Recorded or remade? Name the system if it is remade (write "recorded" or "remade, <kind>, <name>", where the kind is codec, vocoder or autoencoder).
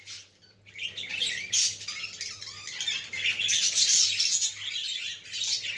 recorded